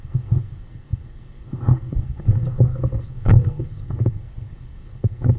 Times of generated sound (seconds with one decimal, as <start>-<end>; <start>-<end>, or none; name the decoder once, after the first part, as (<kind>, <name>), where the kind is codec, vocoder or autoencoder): 0.0-5.4 (codec, SNAC)